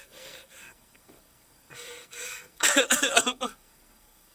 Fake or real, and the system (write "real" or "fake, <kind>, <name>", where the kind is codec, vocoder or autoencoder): fake, codec, SNAC